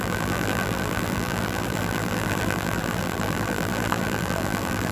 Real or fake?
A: fake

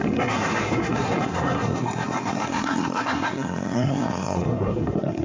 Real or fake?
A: fake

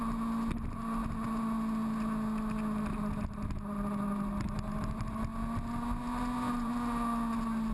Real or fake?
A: real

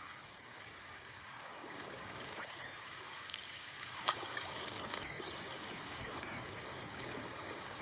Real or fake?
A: fake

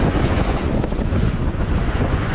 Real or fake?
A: fake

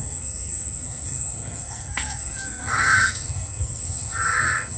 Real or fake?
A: fake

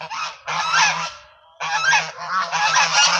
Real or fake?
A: real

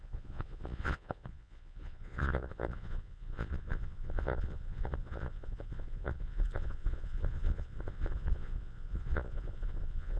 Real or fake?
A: fake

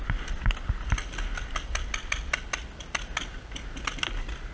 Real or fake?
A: real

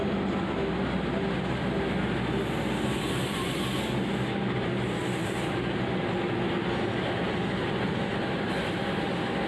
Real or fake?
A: real